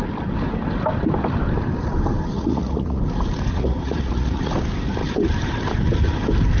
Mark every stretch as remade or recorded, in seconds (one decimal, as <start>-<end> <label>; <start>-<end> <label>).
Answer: 0.0-2.3 recorded; 2.3-3.0 remade; 3.0-3.5 recorded; 3.5-4.5 remade; 4.5-6.6 recorded